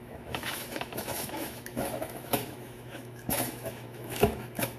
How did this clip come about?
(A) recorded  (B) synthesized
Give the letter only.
B